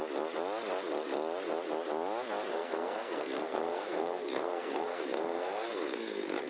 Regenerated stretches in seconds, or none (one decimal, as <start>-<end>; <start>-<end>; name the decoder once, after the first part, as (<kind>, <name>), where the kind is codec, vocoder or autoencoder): 2.5-6.5 (codec, SNAC)